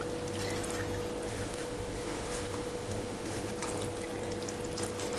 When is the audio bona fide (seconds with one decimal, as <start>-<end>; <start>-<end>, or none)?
0.0-1.3; 3.5-5.2